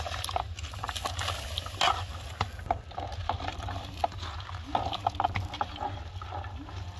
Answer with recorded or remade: recorded